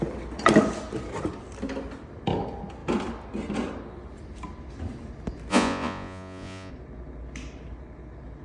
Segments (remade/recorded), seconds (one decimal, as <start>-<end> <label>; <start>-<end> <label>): 0.0-5.5 recorded; 5.5-6.7 remade; 6.7-8.4 recorded

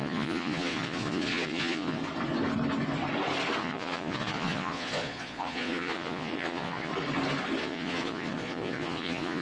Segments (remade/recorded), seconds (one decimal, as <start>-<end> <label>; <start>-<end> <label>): 0.0-2.0 remade; 2.0-3.6 recorded; 3.6-6.9 remade; 6.9-7.6 recorded; 7.6-9.4 remade

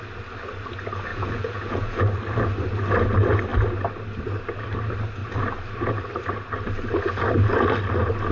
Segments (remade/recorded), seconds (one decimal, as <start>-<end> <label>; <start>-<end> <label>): 0.0-1.1 recorded; 1.1-2.0 remade; 2.0-8.3 recorded

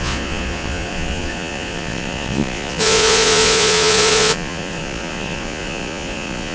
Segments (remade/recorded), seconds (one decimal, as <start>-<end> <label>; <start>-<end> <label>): 0.0-6.5 remade

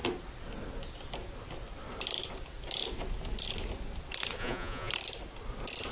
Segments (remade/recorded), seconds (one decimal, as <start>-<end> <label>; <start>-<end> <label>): 0.0-4.4 recorded; 4.4-4.9 remade; 4.9-5.9 recorded

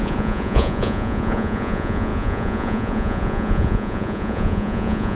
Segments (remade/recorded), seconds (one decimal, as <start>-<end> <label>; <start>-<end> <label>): 0.0-5.2 remade

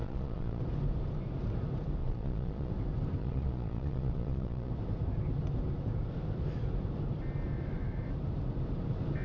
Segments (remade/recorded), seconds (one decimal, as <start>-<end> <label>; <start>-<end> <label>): 0.0-0.6 remade; 0.6-2.0 recorded; 2.0-2.7 remade; 2.7-3.2 recorded; 3.2-4.7 remade; 4.7-9.2 recorded